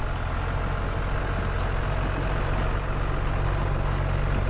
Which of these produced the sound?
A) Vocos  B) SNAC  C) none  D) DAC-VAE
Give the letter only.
C